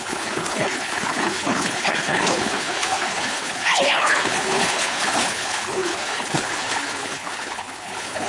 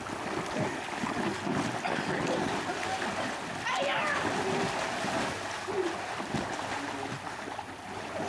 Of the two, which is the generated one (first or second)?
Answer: first